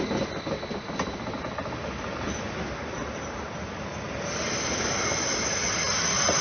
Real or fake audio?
real